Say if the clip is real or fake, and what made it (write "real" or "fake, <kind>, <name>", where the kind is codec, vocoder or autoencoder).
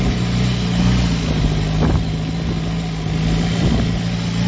real